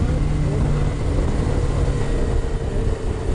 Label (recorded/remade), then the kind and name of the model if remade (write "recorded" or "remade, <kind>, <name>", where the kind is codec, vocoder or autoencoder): recorded